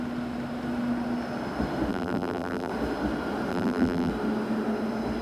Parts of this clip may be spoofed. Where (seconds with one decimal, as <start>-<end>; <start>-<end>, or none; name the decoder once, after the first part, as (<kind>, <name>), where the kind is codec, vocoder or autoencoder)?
1.9-2.7 (vocoder, BigVGAN v2); 3.5-4.1